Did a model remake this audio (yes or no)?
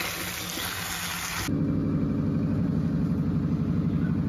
no